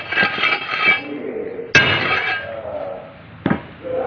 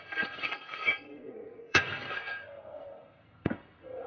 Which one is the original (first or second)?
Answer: first